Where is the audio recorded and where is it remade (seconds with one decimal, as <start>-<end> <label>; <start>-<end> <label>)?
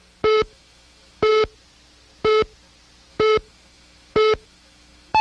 0.0-1.3 remade; 1.3-3.1 recorded; 3.1-5.2 remade